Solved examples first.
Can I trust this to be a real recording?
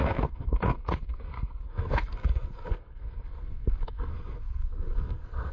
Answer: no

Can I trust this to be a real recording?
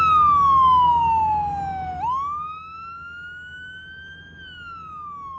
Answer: yes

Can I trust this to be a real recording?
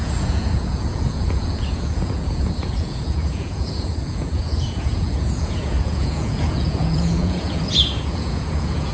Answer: no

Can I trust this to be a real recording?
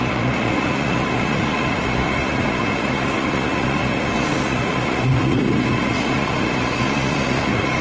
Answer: no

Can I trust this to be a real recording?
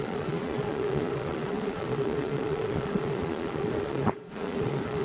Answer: no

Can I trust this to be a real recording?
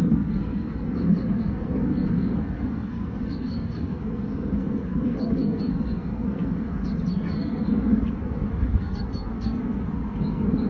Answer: no